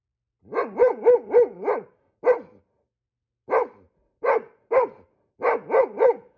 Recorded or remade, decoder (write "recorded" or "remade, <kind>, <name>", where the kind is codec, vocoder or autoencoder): recorded